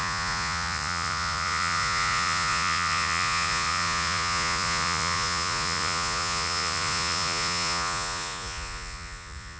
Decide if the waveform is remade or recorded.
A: remade